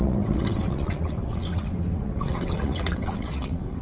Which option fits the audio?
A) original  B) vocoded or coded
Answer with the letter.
B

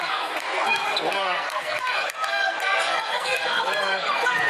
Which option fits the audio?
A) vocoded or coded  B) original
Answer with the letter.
A